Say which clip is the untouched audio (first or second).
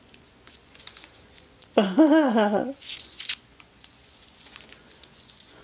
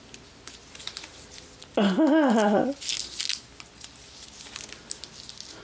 second